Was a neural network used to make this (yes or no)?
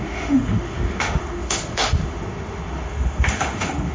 yes